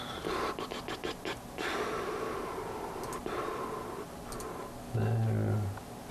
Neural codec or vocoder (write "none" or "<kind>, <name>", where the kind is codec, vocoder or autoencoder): none